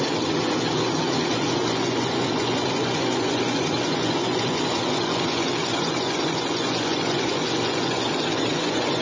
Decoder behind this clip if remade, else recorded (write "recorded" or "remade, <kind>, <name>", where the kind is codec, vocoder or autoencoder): remade, vocoder, Vocos